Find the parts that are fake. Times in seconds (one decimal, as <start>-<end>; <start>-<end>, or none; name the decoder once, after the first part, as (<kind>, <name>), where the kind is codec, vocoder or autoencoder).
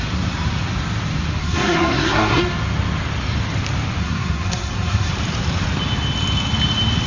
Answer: 1.4-2.4 (codec, SNAC); 4.0-5.1